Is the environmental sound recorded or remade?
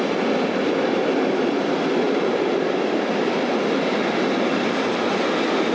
recorded